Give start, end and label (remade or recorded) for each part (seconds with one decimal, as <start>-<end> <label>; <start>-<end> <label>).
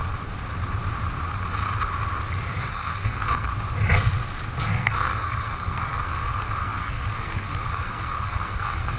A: 0.0-2.7 recorded; 2.7-3.5 remade; 3.5-4.6 recorded; 4.6-9.0 remade